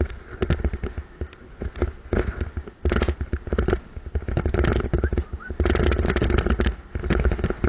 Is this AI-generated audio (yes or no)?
no